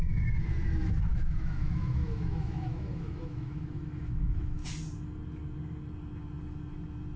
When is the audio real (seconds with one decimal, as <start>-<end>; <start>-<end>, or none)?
4.6-7.2